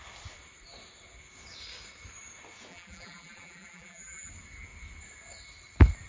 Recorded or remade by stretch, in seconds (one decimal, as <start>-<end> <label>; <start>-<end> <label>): 0.0-2.7 recorded; 2.7-4.3 remade; 4.3-6.1 recorded